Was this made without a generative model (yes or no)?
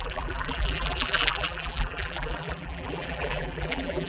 no